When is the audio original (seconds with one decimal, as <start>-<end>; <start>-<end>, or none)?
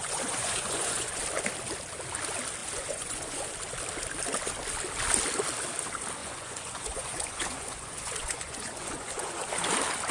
1.2-2.6; 3.5-6.2; 9.4-10.1